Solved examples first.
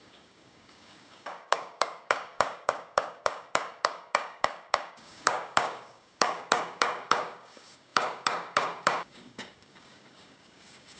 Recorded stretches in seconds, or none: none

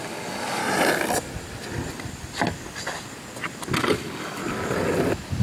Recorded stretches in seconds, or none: 0.6-3.8; 4.4-5.4

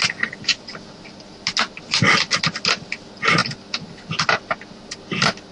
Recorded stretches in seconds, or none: 0.0-5.5

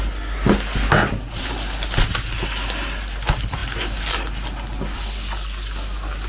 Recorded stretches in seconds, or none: 0.0-6.3